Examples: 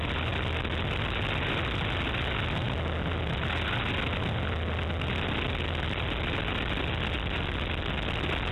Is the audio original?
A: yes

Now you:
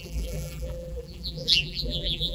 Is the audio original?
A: no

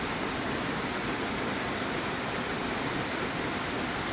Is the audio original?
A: no